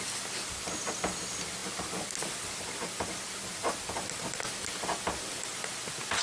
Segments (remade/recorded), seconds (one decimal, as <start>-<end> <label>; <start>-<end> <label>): 0.0-6.2 recorded